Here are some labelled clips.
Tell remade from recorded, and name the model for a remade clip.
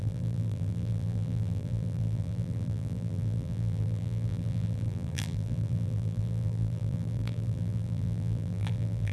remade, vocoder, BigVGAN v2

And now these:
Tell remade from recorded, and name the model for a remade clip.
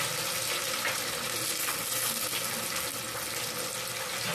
recorded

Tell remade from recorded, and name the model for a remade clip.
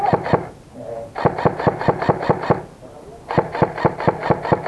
recorded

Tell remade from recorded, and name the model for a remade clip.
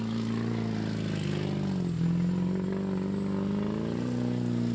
recorded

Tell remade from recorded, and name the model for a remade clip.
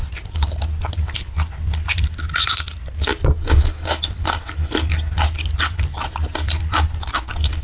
recorded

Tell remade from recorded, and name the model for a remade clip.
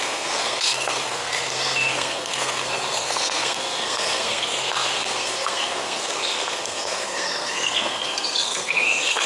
remade, codec, SNAC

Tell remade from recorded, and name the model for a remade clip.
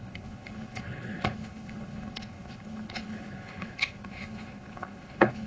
remade, codec, HILCodec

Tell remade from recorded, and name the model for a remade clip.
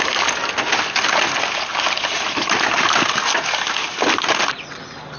recorded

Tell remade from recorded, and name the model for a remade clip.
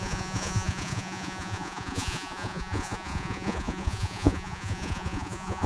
remade, vocoder, Vocos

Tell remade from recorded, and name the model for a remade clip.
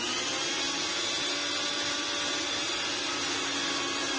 recorded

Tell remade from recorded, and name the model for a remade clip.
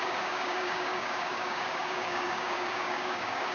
remade, codec, DAC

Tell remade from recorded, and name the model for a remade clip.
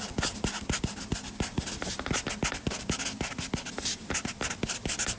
recorded